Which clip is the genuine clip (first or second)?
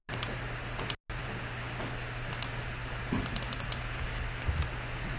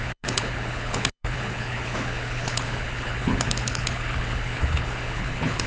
first